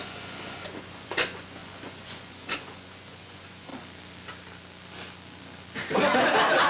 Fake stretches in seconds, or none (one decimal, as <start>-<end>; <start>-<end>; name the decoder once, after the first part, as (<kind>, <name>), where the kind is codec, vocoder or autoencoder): 0.0-3.7 (vocoder, Vocos)